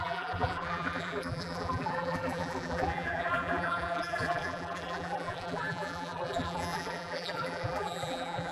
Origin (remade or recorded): remade